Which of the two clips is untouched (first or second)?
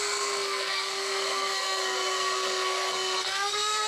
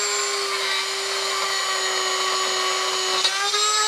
second